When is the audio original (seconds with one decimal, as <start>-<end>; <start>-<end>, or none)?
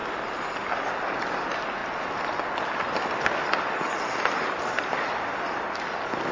0.0-0.9; 1.8-5.6